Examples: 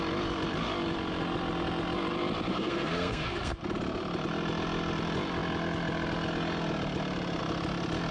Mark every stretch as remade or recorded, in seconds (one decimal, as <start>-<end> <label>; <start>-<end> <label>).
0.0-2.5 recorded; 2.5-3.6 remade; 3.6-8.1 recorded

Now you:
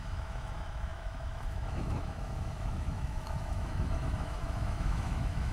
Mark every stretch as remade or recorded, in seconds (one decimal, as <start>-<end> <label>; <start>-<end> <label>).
0.0-5.5 remade

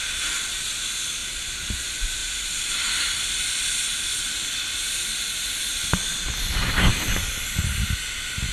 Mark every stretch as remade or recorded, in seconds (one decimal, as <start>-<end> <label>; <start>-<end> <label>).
0.0-1.2 recorded; 1.2-1.8 remade; 1.8-2.2 recorded; 2.2-5.0 remade; 5.0-8.5 recorded

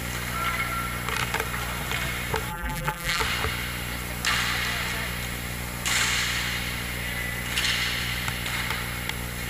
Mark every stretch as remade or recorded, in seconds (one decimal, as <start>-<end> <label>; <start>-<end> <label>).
0.0-2.5 recorded; 2.5-3.2 remade; 3.2-9.5 recorded

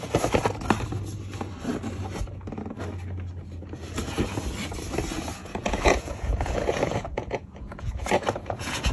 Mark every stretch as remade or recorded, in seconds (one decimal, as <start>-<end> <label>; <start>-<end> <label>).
0.0-5.4 recorded; 5.4-8.9 remade

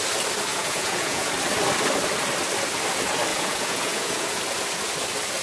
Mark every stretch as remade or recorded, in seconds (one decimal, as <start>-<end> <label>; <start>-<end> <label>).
0.0-0.5 recorded; 0.5-1.3 remade; 1.3-3.3 recorded; 3.3-4.4 remade; 4.4-5.4 recorded

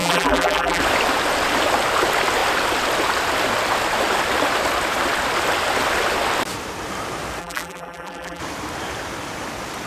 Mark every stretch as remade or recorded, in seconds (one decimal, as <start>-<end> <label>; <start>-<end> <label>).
0.0-0.8 remade; 0.8-7.4 recorded; 7.4-8.4 remade; 8.4-9.9 recorded